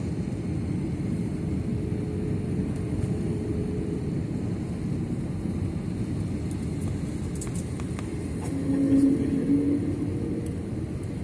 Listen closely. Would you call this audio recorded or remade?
recorded